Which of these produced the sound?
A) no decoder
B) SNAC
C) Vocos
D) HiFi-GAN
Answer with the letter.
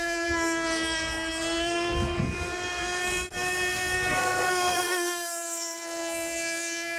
B